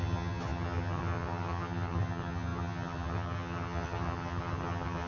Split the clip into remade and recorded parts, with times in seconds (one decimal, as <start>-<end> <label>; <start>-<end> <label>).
0.0-5.1 remade